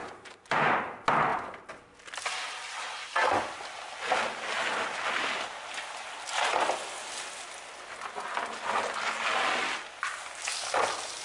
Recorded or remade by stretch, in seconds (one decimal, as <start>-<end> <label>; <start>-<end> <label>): 0.0-0.7 remade; 0.7-11.2 recorded